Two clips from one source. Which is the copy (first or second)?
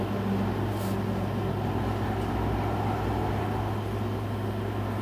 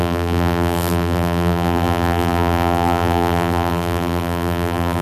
second